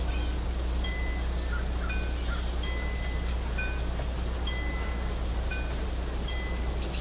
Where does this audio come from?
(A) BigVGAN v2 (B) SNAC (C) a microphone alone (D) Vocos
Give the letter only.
C